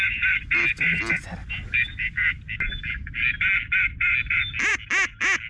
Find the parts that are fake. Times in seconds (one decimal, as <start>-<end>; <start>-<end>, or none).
none